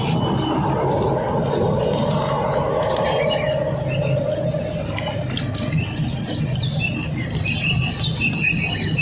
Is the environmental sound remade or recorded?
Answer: recorded